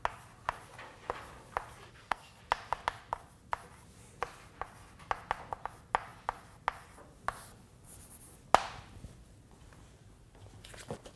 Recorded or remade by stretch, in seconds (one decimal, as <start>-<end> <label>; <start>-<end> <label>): 0.0-1.9 recorded; 1.9-2.4 remade; 2.4-11.2 recorded